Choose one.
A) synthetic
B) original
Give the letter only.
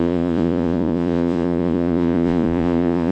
A